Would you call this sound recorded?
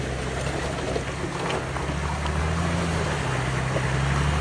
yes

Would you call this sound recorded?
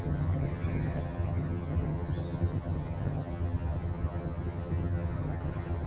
no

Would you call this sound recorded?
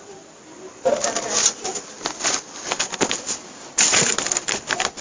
yes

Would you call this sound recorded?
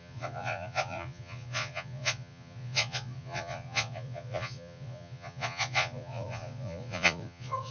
no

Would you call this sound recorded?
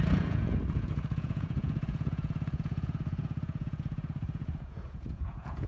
no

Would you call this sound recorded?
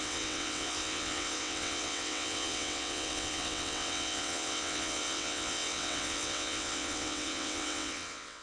no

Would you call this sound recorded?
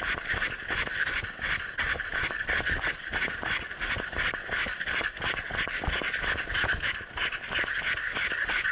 yes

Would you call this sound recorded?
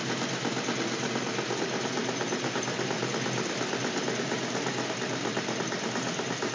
yes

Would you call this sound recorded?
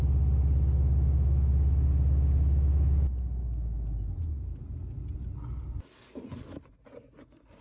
yes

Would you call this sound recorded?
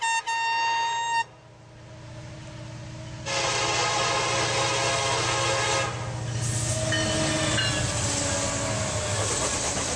yes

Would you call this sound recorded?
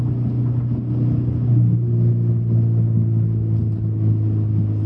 yes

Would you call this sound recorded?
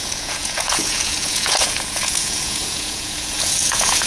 no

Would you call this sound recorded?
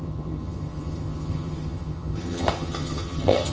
no